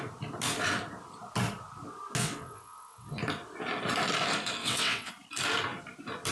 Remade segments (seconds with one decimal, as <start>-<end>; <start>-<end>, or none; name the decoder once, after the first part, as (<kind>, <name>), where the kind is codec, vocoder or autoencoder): 2.2-3.2 (vocoder, WaveNeXt); 4.6-5.1